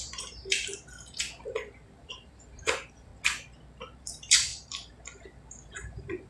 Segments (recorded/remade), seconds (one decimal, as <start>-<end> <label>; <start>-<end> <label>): 0.0-3.1 remade; 3.1-4.0 recorded; 4.0-6.3 remade